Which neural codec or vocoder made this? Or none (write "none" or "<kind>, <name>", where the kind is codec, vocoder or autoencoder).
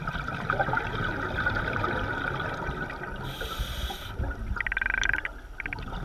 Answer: none